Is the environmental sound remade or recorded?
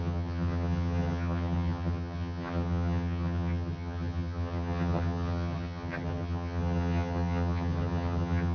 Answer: remade